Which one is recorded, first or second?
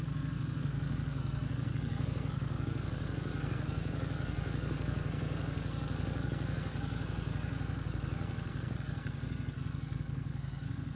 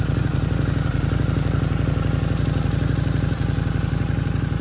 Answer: second